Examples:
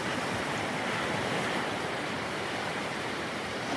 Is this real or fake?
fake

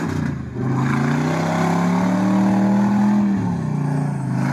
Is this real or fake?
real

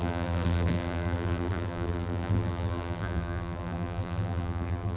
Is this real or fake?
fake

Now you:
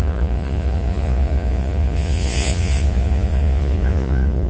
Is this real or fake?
fake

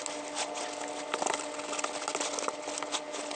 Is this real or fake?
real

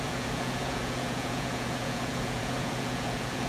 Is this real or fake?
fake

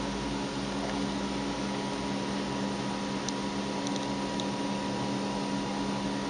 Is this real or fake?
real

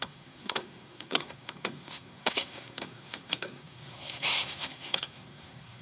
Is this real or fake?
fake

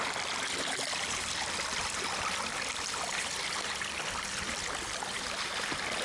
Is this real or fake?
real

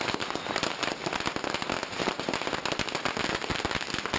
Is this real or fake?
real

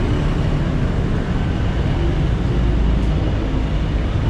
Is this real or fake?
real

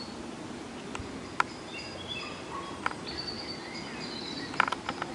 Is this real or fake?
real